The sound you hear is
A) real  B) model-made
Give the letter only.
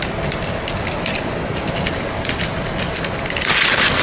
A